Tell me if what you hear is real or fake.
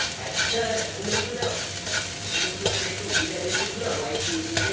real